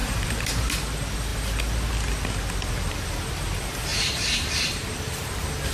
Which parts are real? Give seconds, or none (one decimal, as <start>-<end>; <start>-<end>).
0.7-3.9; 5.2-5.7